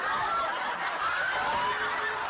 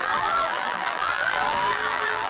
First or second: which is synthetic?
second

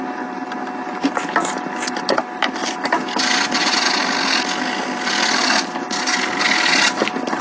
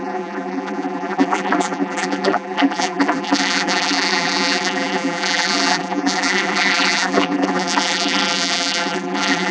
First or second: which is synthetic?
second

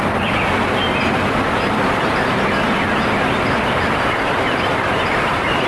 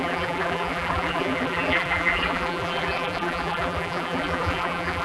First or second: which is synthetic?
second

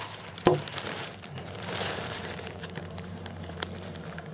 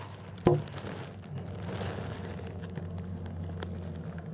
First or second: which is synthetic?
first